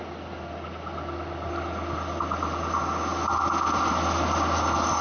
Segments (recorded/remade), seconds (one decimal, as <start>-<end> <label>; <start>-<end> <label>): 0.0-5.0 recorded